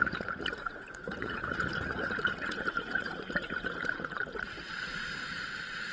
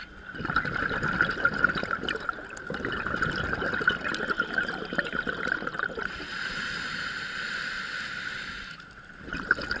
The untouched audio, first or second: second